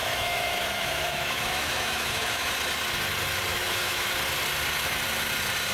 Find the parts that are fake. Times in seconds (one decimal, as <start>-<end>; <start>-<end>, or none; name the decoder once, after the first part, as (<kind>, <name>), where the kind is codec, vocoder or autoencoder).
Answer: 0.0-2.5 (autoencoder, DAC-VAE); 3.5-4.1